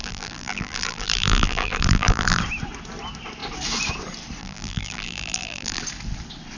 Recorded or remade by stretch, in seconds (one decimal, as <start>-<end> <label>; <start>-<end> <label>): 0.0-2.4 remade; 2.4-4.4 recorded; 4.4-5.8 remade; 5.8-6.6 recorded